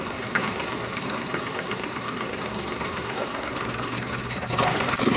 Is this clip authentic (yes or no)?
no